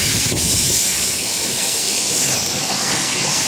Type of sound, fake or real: fake